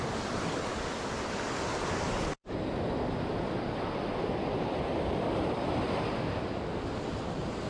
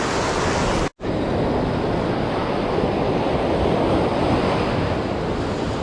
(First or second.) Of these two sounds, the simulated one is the first